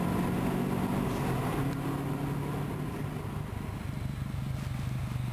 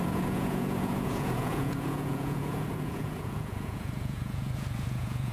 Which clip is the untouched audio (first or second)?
first